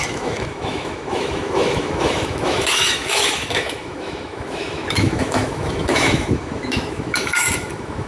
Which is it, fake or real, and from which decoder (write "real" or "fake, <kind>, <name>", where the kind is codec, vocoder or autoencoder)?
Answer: fake, autoencoder, DAC-VAE